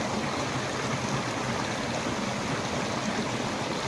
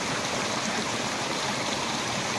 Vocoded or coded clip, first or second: second